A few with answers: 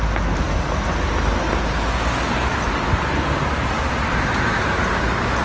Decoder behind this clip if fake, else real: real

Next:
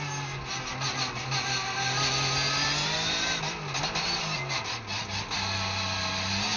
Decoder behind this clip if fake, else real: real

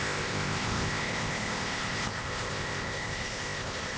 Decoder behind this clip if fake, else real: fake, codec, ZipCodec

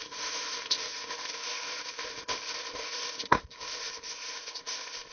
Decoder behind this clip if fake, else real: fake, codec, ZipCodec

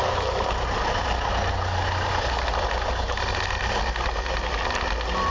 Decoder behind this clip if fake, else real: real